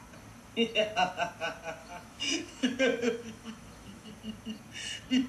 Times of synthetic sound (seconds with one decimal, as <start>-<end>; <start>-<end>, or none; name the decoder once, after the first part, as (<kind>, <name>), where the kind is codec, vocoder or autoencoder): 1.8-4.1 (autoencoder, DAC-VAE)